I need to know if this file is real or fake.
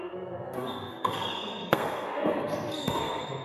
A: fake